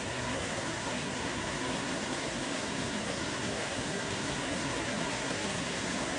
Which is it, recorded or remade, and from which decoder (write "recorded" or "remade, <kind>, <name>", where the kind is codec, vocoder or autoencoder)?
remade, codec, SNAC